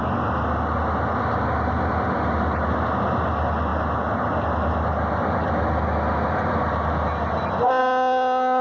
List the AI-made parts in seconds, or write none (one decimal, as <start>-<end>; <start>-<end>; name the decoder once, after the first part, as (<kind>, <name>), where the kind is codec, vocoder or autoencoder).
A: none